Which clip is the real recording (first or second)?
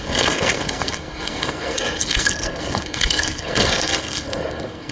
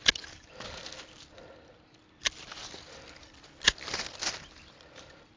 second